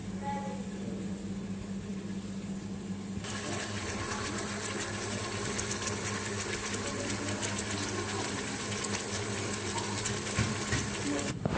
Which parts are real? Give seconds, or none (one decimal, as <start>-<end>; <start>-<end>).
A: 0.9-11.6

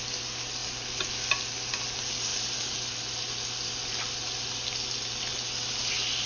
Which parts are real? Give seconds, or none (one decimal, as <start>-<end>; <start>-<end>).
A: 0.0-6.3

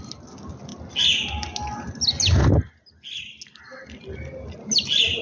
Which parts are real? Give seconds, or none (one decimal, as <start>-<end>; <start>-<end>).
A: 0.0-5.2

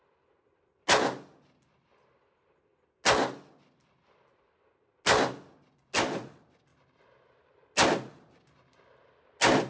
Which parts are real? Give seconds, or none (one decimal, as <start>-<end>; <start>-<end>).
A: 0.0-9.7

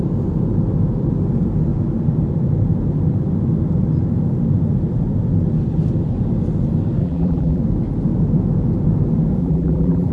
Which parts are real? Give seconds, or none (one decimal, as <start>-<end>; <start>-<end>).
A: 0.0-7.0; 7.6-9.4

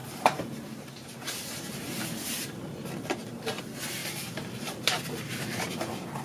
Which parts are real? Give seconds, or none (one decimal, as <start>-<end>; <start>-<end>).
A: 3.6-4.0; 5.1-6.2

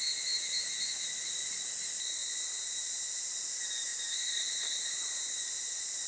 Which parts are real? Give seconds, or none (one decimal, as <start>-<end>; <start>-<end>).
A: 0.0-3.9; 4.9-6.1